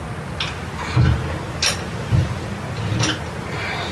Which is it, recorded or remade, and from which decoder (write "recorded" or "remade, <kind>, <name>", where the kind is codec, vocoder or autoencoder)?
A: recorded